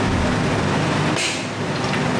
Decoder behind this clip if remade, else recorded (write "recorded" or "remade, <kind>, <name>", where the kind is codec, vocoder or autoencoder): recorded